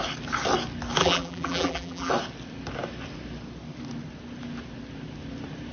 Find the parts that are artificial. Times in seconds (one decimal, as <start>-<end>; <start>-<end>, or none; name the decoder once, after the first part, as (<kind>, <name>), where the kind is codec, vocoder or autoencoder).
1.0-2.1 (vocoder, BigVGAN v2)